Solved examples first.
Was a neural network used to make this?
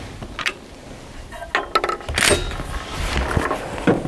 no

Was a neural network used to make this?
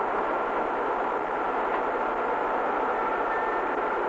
no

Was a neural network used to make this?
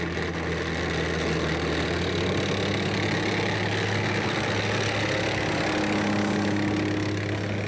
no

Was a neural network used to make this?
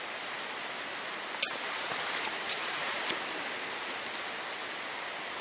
no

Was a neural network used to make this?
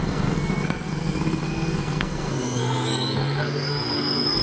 yes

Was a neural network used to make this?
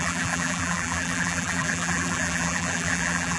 yes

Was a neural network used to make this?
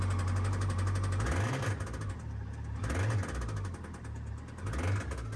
no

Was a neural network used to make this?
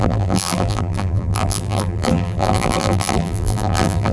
yes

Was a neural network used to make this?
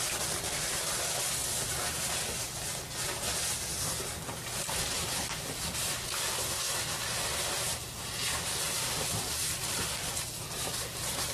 no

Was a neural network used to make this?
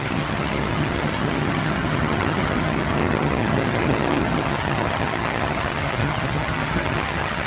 yes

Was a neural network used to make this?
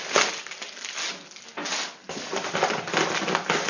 no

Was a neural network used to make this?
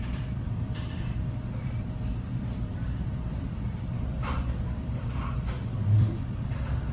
yes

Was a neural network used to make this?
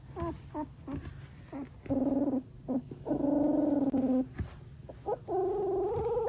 no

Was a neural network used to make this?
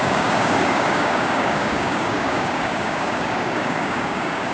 yes